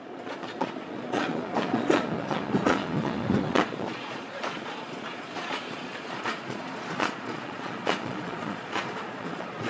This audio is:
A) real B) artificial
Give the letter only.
B